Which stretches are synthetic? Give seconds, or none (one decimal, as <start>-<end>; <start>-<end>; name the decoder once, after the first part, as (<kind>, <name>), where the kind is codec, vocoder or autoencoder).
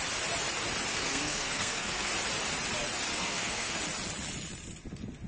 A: 0.9-2.1 (codec, SNAC); 3.1-3.8